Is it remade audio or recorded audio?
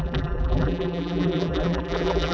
remade